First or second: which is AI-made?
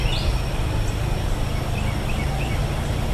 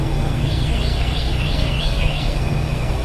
second